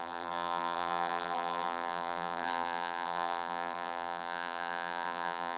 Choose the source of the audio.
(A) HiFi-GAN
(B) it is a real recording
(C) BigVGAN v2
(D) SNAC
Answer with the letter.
C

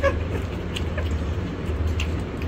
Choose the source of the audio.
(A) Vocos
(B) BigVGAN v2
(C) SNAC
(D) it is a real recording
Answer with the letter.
B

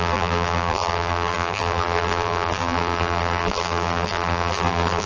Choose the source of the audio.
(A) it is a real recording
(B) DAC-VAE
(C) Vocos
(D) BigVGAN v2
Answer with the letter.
D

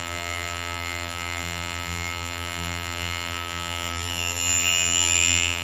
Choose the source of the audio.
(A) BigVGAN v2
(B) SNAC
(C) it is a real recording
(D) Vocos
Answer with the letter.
A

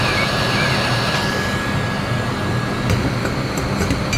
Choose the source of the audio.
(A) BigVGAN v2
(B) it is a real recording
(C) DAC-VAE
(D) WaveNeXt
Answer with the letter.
B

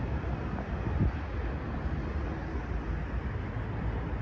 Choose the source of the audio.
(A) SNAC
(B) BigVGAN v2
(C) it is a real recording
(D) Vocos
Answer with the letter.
C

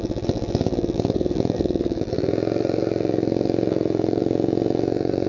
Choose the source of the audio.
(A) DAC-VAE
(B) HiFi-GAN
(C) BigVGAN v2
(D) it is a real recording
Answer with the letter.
C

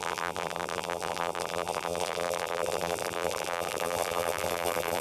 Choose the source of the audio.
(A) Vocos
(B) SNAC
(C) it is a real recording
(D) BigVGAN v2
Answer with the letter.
D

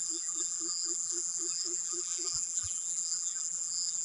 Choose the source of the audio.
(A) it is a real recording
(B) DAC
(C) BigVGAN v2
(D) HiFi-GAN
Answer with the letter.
C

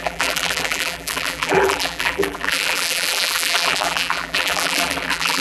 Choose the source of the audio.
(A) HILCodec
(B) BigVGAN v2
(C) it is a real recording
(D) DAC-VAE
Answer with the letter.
B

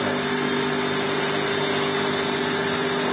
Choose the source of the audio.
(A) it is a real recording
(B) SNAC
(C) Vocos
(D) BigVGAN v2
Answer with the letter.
A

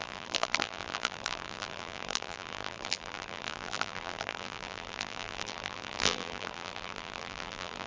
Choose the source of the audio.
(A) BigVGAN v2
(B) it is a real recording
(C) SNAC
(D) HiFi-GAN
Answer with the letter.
A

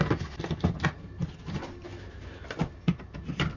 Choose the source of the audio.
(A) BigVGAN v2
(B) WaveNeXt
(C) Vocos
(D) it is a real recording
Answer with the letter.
D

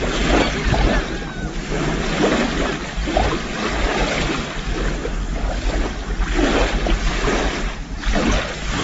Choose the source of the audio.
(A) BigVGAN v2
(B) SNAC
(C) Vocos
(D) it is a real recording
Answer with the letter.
D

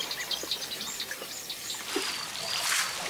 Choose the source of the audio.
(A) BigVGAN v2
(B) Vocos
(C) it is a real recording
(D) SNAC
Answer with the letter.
C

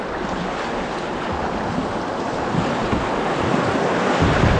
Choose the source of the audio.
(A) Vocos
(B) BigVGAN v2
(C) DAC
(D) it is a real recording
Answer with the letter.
D